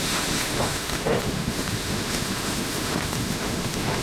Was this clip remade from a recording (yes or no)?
yes